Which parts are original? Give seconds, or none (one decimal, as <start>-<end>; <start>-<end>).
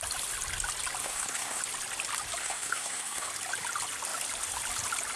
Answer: 0.0-1.0; 1.6-2.4; 3.3-5.2